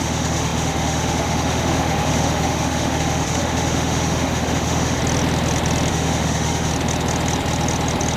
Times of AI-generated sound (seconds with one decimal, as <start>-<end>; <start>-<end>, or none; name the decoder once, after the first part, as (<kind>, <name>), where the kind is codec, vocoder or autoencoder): 0.0-5.0 (autoencoder, DAC-VAE); 5.9-6.7